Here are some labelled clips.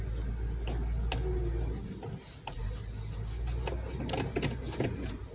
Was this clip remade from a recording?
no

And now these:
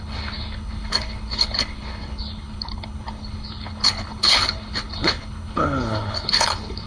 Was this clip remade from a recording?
yes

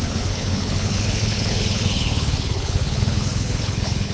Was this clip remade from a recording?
yes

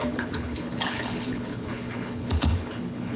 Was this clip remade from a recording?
yes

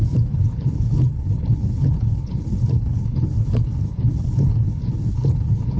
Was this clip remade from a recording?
yes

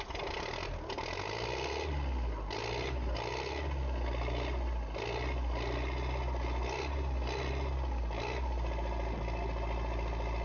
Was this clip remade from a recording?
no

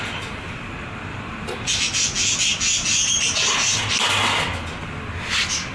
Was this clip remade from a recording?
no